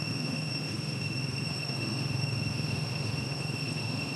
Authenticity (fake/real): fake